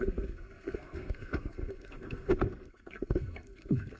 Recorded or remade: remade